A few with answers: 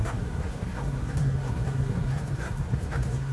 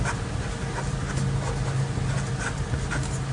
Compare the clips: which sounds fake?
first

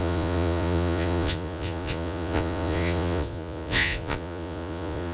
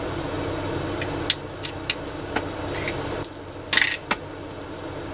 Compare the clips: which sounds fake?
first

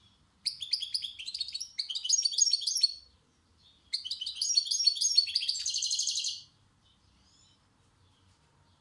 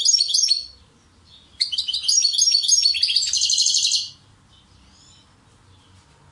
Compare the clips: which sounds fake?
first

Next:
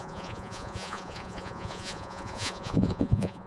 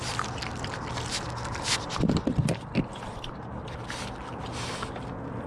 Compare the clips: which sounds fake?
first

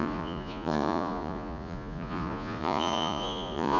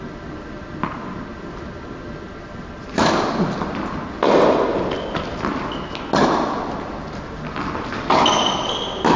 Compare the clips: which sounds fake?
first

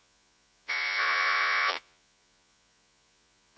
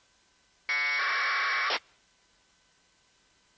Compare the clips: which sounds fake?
first